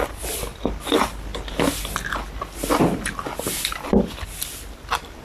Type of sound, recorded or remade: recorded